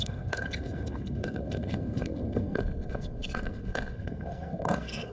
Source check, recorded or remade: remade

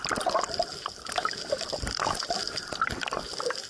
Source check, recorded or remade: recorded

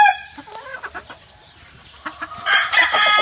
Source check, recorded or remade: recorded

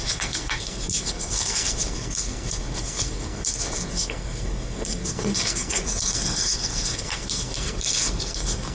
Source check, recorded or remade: remade